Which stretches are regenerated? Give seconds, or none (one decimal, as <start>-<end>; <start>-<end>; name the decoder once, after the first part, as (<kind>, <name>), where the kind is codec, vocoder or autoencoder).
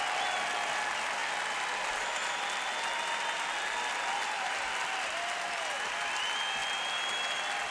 none